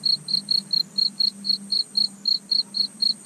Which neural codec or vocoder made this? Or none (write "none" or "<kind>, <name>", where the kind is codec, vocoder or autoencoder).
none